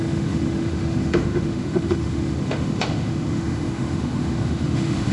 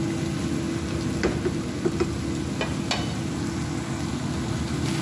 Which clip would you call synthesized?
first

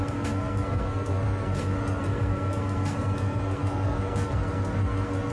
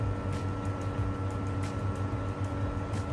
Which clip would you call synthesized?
first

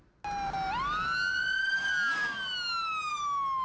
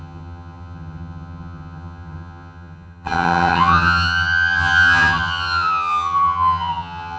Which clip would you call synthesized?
second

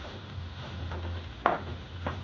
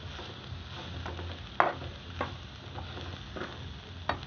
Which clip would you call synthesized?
first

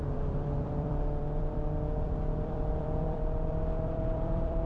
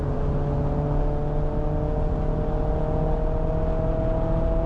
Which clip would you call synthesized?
first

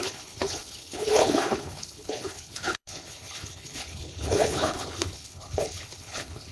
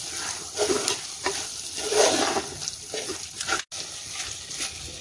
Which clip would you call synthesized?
first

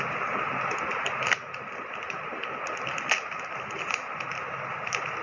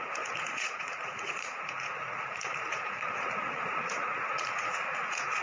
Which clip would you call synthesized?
second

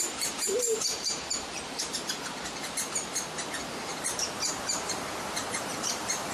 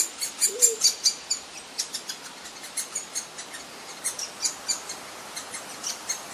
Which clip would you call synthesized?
first